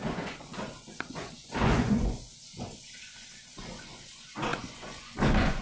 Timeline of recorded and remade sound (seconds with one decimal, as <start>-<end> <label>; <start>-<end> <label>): 0.0-5.6 remade